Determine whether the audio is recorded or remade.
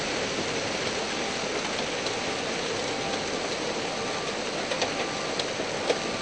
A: recorded